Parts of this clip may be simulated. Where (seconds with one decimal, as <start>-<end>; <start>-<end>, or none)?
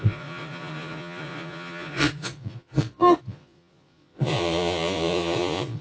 0.0-5.8